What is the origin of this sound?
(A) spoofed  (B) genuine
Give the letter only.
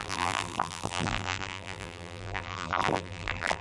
A